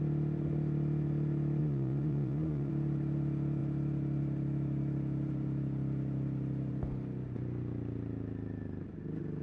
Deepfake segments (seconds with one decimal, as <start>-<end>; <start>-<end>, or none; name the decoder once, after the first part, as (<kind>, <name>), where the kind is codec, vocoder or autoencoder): 1.6-2.7 (vocoder, Vocos)